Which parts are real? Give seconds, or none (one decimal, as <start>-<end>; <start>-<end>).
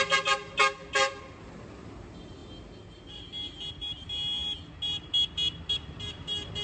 0.0-6.6